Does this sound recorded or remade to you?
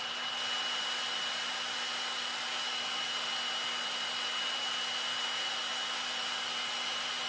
recorded